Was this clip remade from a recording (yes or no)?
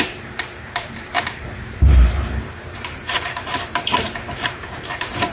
yes